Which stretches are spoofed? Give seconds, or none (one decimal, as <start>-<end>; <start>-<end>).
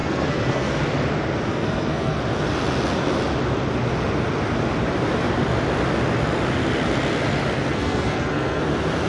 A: 0.0-0.8; 1.5-2.2; 7.7-8.6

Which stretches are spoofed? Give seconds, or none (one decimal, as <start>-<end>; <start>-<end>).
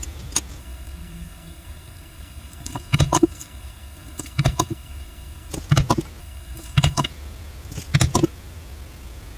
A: 0.6-5.5; 6.2-7.1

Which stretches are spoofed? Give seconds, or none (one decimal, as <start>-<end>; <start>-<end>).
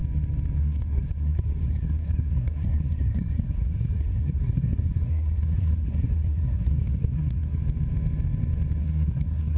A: 0.6-7.6; 8.8-9.6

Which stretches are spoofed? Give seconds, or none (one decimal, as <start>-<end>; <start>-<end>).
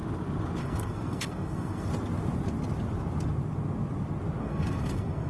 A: 0.6-1.9; 4.4-5.3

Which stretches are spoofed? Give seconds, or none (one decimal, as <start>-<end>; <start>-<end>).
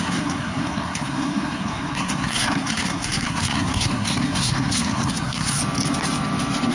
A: 0.0-5.6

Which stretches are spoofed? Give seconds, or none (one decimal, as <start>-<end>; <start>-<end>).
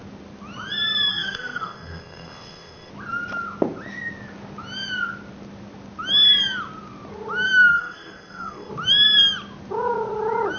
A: 1.1-2.9; 7.7-8.7